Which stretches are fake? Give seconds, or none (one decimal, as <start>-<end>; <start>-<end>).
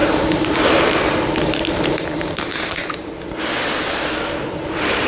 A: 0.0-3.1